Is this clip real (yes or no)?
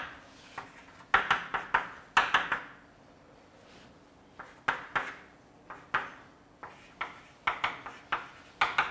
yes